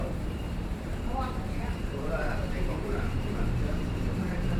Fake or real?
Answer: fake